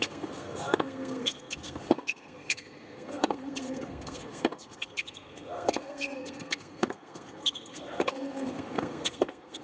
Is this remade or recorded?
remade